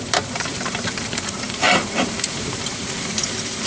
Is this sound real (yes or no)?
no